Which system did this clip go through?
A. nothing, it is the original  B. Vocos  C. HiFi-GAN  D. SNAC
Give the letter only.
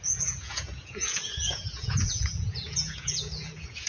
B